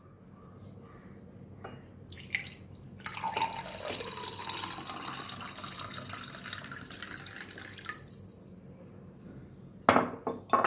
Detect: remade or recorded recorded